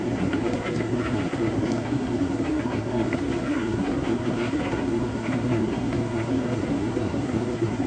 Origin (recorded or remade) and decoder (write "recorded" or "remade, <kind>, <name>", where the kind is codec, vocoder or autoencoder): remade, codec, SNAC